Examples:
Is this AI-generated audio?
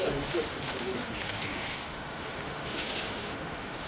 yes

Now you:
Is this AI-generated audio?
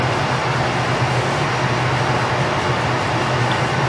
no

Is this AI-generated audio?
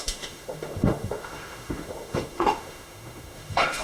yes